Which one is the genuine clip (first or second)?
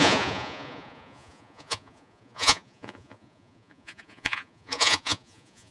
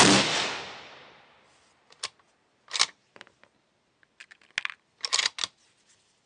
second